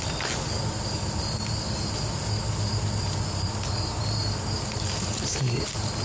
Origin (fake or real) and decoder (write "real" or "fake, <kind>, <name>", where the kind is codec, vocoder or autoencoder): real